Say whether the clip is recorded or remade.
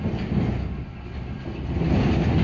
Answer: recorded